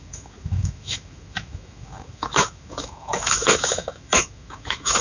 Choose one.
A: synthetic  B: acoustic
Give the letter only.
A